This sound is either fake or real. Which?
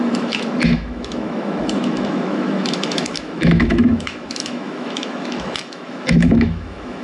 fake